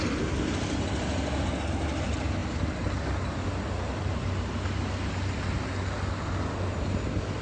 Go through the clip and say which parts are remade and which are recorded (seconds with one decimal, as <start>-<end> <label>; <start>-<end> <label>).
0.0-7.4 recorded